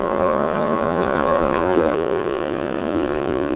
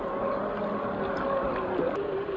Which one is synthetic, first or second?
first